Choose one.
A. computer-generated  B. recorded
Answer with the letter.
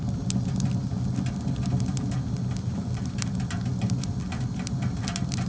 B